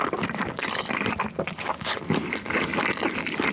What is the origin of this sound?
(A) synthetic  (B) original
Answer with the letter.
B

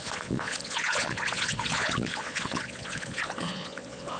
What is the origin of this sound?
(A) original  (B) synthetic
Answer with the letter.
B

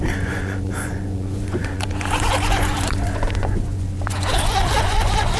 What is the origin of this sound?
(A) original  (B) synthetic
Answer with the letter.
B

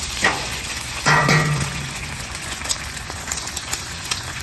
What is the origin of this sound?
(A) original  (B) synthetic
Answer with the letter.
B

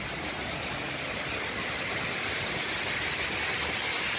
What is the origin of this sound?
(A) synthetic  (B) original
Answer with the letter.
B